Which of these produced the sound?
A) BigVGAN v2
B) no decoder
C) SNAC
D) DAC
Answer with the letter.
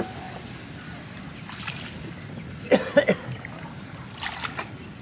B